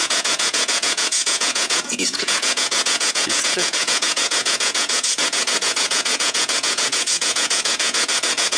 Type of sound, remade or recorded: remade